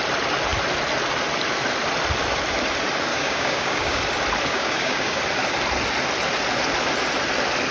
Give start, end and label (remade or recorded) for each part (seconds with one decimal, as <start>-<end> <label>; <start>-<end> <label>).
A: 0.0-3.1 recorded; 3.1-4.0 remade; 4.0-4.5 recorded; 4.5-5.2 remade; 5.2-7.7 recorded